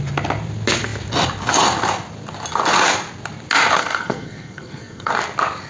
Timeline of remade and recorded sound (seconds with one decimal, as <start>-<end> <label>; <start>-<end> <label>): 0.0-3.8 recorded; 3.8-5.1 remade; 5.1-5.7 recorded